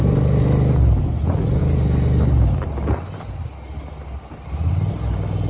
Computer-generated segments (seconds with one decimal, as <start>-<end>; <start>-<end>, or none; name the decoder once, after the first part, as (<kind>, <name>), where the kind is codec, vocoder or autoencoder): none